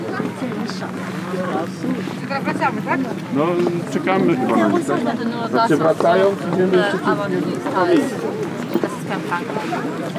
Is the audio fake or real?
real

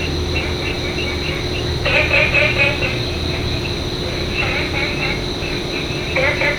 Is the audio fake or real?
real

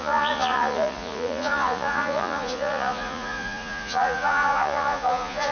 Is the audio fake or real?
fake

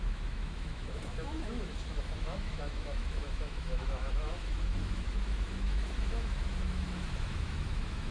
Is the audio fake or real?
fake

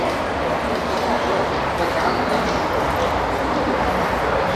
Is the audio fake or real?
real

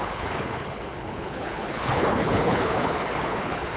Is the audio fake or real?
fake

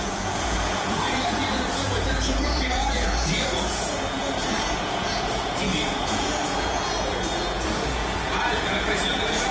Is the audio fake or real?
fake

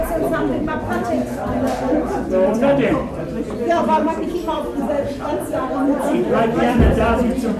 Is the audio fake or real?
fake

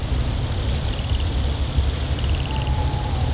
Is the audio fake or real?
real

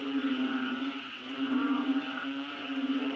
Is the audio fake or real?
fake